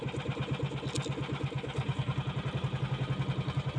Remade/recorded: recorded